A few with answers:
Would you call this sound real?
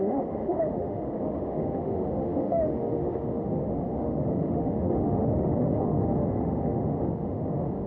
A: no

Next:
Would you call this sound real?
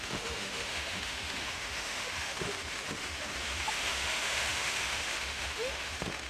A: no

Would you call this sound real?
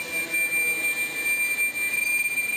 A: yes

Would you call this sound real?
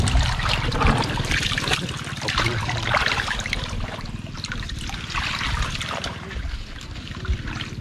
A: yes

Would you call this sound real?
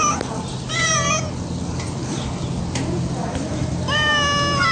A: yes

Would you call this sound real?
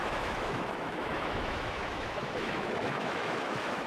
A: no